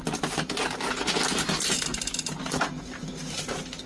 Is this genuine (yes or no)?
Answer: yes